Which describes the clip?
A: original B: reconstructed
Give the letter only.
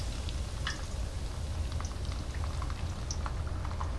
A